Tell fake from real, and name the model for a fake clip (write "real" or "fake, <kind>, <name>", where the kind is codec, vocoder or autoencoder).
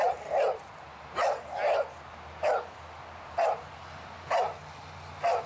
real